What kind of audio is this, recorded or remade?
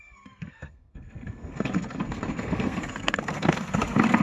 remade